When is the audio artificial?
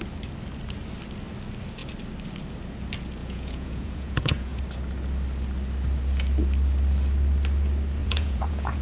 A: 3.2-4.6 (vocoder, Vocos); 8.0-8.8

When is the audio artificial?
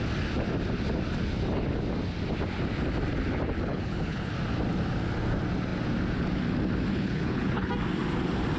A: 3.7-4.3 (codec, HILCodec); 6.9-7.7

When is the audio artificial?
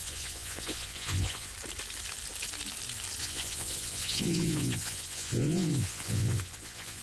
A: 0.0-1.5 (vocoder, Vocos); 3.2-7.0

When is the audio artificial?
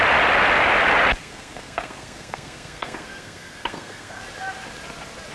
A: 1.2-4.2 (codec, SNAC)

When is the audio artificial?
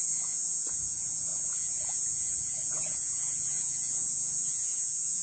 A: 0.0-5.2 (vocoder, Vocos)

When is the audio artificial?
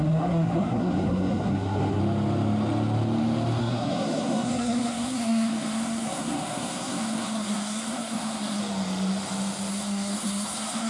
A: 0.0-2.0 (codec, SNAC); 3.6-8.6; 9.7-10.9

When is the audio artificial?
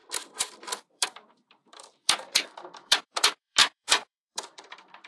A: 0.9-5.1 (vocoder, BigVGAN v2)